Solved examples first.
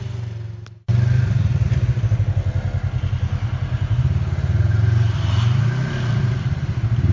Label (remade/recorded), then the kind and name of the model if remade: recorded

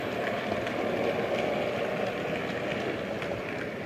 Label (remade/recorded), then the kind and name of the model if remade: recorded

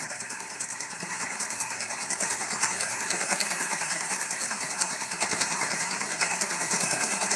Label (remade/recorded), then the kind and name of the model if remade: remade, codec, SNAC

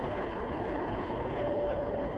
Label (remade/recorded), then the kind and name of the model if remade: remade, codec, HILCodec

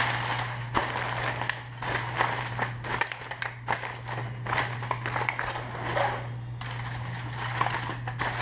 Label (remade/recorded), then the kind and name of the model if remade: recorded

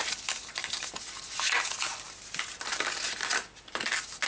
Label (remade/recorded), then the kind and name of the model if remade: recorded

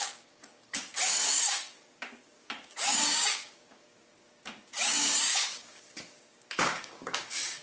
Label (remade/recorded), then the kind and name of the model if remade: remade, codec, DAC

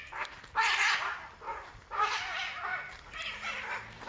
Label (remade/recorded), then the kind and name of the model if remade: recorded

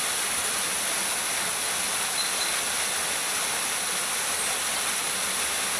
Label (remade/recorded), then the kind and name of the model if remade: recorded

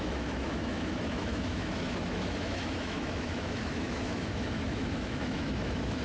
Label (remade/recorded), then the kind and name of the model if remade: remade, autoencoder, DAC-VAE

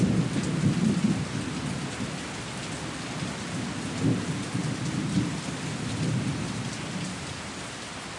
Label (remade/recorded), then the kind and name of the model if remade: recorded